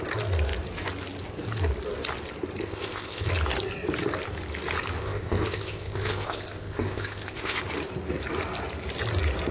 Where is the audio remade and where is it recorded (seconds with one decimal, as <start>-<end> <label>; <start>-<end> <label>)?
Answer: 0.0-2.6 recorded; 2.6-3.3 remade; 3.3-5.0 recorded; 5.0-7.6 remade; 7.6-9.5 recorded